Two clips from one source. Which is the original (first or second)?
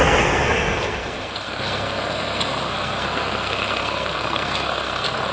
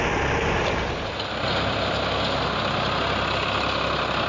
second